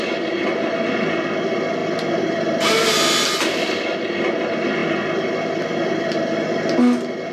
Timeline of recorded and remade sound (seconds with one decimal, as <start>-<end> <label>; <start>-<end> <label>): 0.0-7.3 recorded

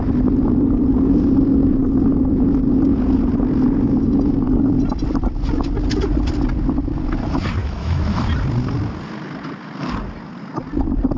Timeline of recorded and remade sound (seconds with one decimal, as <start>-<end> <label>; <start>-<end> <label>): 0.0-7.6 recorded; 7.6-8.2 remade; 8.2-11.2 recorded

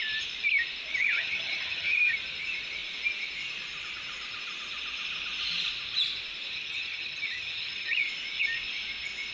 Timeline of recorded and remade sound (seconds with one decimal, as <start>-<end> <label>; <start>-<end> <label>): 0.0-1.0 recorded; 1.0-2.1 remade; 2.1-6.5 recorded; 6.5-8.1 remade; 8.1-9.3 recorded